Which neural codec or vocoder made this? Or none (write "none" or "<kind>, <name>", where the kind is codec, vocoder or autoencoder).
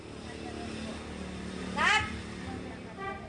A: none